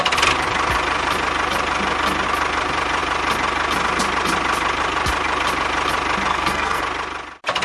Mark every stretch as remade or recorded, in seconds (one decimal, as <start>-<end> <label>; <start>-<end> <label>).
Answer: 0.0-6.3 recorded; 6.3-6.8 remade; 6.8-7.6 recorded